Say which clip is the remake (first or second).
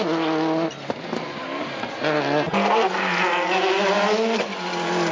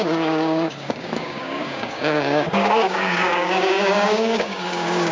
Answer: second